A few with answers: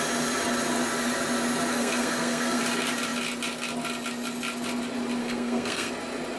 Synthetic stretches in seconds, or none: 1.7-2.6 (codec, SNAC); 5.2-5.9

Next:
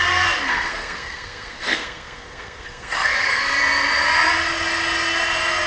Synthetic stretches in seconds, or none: 0.5-3.6 (codec, SNAC)

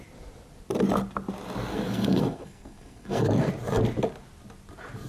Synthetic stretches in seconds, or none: 1.7-3.5 (codec, SNAC)

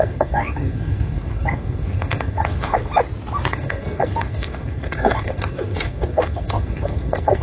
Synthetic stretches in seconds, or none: 0.0-2.9 (codec, SNAC); 3.5-7.4